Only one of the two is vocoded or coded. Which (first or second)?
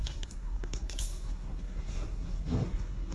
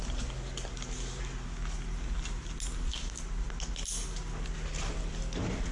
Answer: first